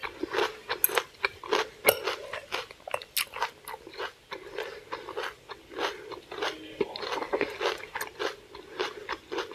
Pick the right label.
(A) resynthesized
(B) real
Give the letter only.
B